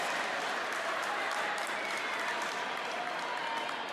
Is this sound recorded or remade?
recorded